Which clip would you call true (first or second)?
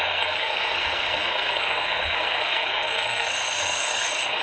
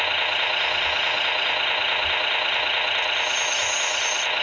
second